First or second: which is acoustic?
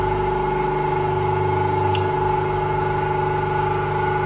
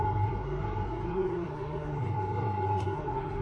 first